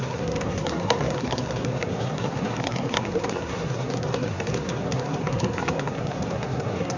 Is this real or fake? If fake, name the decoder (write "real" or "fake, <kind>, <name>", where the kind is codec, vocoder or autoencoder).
fake, codec, SNAC